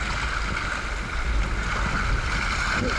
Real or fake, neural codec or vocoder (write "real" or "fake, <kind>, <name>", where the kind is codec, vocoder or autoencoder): real